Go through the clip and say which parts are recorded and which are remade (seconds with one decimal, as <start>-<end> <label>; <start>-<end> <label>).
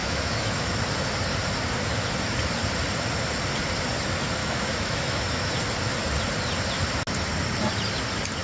0.0-0.7 remade; 0.7-4.4 recorded; 4.4-5.5 remade; 5.5-8.4 recorded